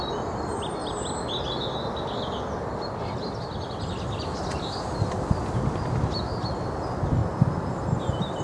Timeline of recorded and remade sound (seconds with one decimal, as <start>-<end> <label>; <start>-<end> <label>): 0.0-8.4 recorded